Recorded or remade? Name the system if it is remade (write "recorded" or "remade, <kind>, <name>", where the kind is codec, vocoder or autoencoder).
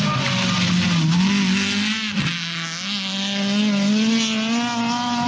recorded